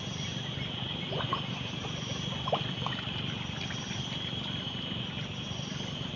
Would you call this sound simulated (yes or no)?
no